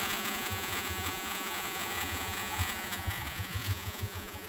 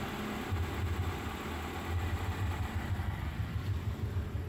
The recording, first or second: second